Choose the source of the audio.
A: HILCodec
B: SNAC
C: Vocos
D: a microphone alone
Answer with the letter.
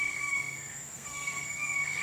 B